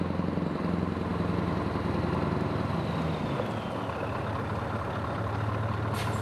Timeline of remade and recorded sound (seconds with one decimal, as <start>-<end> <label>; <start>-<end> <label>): 0.0-6.2 recorded